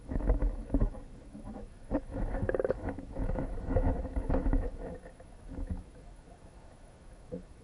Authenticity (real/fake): fake